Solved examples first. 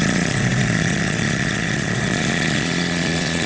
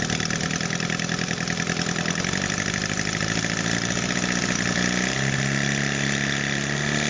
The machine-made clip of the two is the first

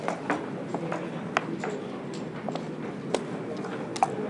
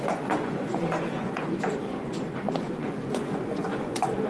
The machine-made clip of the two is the second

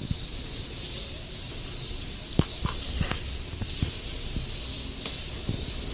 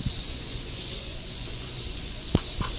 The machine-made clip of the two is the second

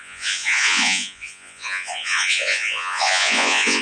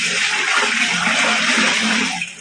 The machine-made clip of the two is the first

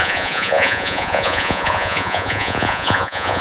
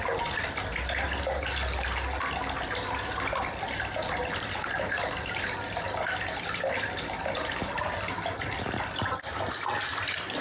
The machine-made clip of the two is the first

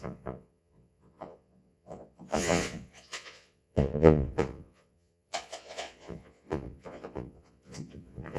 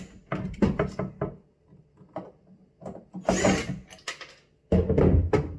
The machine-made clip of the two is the first